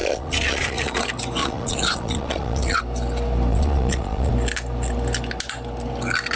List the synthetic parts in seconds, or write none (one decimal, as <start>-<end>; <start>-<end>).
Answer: 0.0-1.0; 1.4-2.8; 3.5-4.3